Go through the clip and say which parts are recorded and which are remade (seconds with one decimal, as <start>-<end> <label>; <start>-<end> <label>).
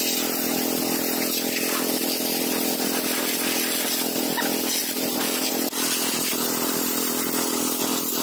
0.0-4.8 recorded; 4.8-5.5 remade; 5.5-8.2 recorded